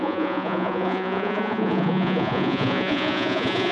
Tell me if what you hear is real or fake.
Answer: fake